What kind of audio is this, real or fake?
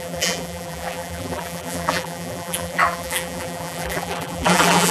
fake